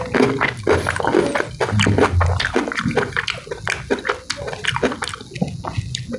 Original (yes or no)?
yes